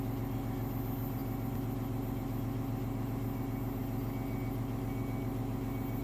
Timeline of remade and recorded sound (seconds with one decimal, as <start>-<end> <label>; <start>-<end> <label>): 0.0-6.0 recorded